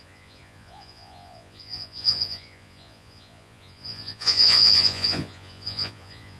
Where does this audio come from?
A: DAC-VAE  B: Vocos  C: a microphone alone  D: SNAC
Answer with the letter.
B